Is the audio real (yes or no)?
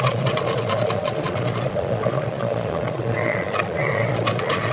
no